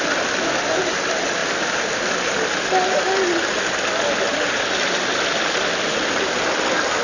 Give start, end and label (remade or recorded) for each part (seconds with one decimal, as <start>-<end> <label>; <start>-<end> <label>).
0.0-7.0 recorded